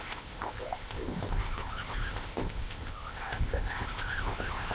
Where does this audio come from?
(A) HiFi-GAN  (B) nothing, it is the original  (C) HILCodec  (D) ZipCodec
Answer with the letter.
D